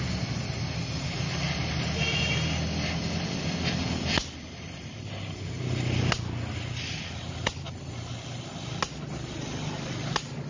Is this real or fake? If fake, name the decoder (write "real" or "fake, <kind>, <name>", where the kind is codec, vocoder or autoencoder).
real